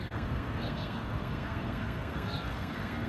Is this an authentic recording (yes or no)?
no